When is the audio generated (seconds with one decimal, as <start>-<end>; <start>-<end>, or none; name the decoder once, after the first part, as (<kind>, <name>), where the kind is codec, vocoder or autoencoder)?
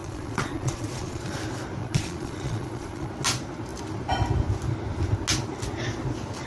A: 0.0-1.4 (vocoder, Vocos); 1.8-3.1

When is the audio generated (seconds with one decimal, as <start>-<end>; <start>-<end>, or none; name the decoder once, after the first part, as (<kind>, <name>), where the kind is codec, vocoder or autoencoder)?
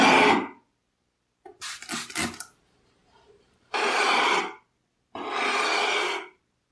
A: 3.0-4.3 (vocoder, BigVGAN v2)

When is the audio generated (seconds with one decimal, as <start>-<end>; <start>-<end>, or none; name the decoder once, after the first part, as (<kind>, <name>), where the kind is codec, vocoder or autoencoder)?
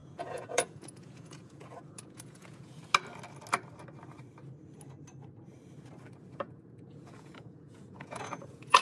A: 0.0-2.8 (vocoder, Vocos); 6.3-8.8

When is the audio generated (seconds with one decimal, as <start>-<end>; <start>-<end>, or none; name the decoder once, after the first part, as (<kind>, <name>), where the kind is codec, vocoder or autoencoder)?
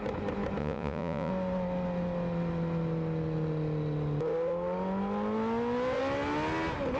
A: 0.6-1.3 (vocoder, Vocos)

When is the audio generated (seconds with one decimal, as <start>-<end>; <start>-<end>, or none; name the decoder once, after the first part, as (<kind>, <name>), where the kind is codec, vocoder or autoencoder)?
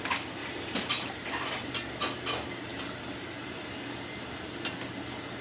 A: 0.4-1.3 (vocoder, BigVGAN v2); 2.7-4.6